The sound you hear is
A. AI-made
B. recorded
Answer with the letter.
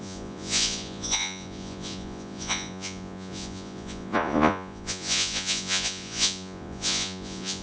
A